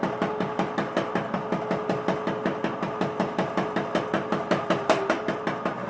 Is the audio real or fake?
real